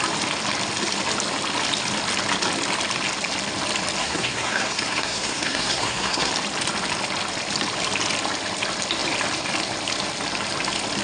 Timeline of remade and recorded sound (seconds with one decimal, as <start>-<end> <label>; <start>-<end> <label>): 0.0-4.0 recorded; 4.0-6.3 remade; 6.3-11.0 recorded

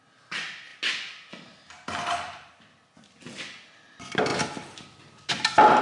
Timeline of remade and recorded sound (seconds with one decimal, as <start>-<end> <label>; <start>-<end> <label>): 0.0-5.8 recorded

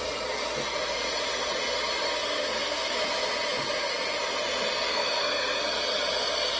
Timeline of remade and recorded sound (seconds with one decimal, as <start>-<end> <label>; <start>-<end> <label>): 0.0-2.2 recorded; 2.2-3.0 remade; 3.0-4.9 recorded; 4.9-5.6 remade; 5.6-6.6 recorded

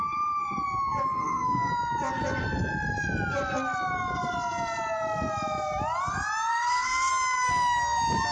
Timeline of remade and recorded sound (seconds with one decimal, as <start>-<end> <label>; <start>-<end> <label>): 0.0-1.2 recorded; 1.2-1.7 remade; 1.7-6.5 recorded; 6.5-7.1 remade; 7.1-8.3 recorded

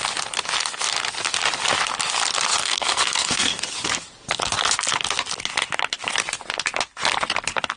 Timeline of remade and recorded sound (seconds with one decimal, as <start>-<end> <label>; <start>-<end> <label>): 0.0-2.6 recorded; 2.6-3.6 remade; 3.6-7.8 recorded

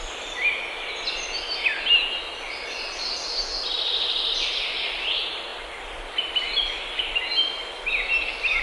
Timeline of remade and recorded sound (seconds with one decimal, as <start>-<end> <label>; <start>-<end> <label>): 0.0-8.6 recorded

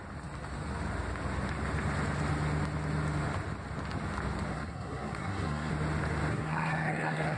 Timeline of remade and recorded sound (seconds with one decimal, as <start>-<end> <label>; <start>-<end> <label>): 0.0-4.5 recorded; 4.5-5.7 remade; 5.7-6.3 recorded; 6.3-7.4 remade